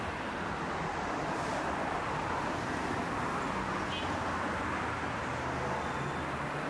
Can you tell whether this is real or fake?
real